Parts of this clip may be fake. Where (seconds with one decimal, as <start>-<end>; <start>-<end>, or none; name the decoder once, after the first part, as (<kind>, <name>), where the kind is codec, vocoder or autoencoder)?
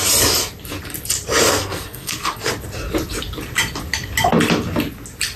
1.5-2.5 (codec, SNAC)